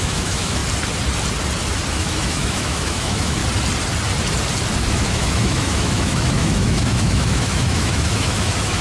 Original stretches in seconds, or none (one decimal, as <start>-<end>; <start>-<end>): 0.6-1.9; 3.4-4.9